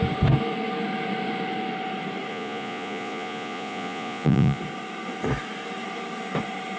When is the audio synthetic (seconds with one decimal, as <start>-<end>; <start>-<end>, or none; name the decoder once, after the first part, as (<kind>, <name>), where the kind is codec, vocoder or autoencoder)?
2.3-4.6 (vocoder, Vocos)